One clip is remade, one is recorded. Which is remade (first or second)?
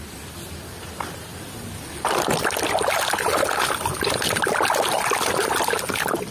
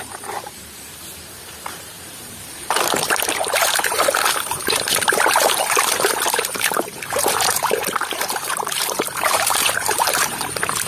second